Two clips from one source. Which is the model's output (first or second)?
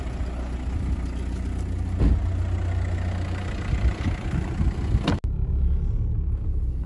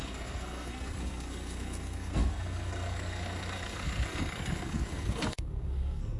second